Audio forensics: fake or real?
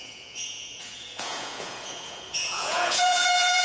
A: fake